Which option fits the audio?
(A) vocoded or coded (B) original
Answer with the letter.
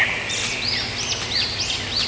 B